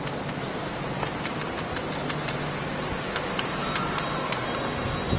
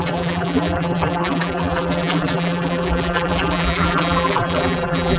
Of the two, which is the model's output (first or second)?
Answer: second